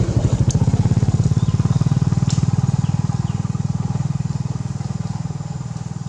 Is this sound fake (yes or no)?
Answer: no